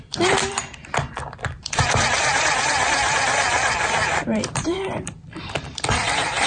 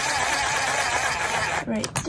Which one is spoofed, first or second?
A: first